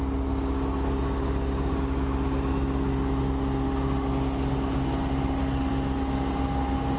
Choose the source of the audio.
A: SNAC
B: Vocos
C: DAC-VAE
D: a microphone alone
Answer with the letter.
D